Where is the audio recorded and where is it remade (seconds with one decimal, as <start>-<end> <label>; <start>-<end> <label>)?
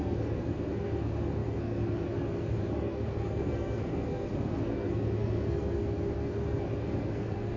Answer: 0.0-7.6 remade